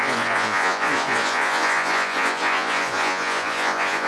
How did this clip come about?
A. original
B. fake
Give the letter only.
B